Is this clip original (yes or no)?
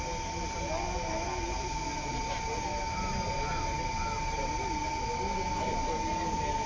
yes